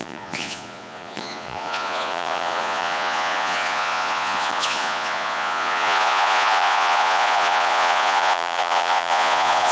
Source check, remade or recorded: remade